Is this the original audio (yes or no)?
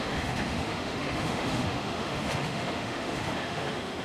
no